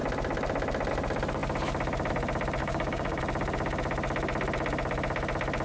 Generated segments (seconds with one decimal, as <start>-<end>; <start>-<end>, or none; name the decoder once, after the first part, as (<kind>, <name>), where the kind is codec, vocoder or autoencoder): 2.6-3.2 (codec, DAC)